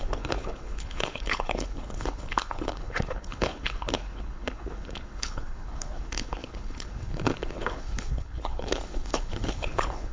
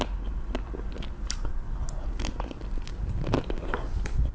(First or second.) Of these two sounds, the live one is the second